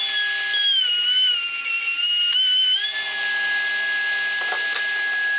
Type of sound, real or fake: real